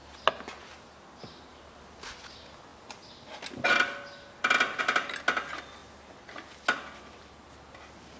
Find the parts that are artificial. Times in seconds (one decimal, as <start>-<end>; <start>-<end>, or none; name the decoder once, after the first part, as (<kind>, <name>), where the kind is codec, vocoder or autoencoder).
none

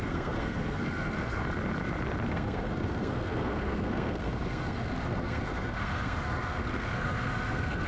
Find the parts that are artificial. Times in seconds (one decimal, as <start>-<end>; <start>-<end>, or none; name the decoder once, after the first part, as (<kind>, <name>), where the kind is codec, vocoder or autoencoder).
0.0-1.4 (codec, SNAC); 2.3-7.9

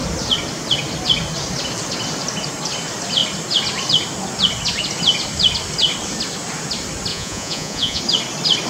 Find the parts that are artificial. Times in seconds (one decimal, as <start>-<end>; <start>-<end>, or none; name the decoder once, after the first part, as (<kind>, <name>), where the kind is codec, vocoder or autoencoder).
7.1-8.0 (vocoder, Vocos)

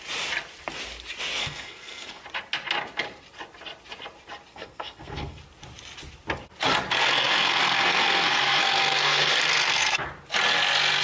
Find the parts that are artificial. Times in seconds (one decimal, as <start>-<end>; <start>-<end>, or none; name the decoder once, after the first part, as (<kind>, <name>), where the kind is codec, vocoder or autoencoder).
1.4-2.2 (codec, SNAC); 4.5-5.4; 7.0-10.1

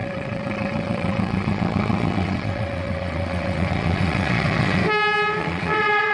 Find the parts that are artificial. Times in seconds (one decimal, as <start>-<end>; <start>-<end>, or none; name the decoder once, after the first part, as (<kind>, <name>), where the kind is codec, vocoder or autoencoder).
0.0-4.8 (vocoder, WaveNeXt); 5.4-6.1

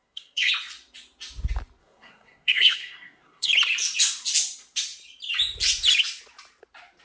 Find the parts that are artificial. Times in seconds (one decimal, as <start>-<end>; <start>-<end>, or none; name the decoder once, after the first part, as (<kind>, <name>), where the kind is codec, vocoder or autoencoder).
0.0-0.5 (codec, SNAC); 1.8-3.5